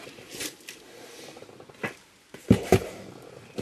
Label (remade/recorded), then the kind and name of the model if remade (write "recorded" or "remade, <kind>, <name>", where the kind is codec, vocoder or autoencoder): recorded